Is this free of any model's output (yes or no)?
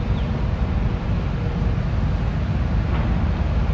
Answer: yes